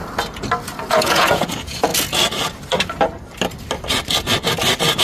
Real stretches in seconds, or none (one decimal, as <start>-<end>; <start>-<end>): 0.0-0.9; 1.9-5.0